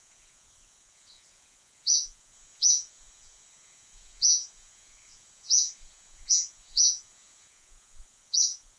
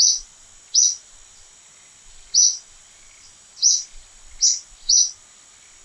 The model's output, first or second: first